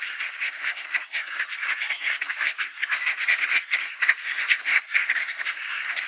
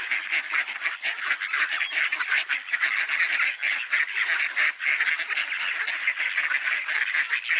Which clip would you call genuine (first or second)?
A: second